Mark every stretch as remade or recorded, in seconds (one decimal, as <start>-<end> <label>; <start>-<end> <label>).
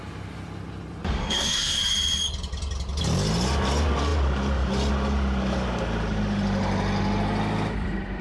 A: 0.0-1.2 recorded; 1.2-1.8 remade; 1.8-8.2 recorded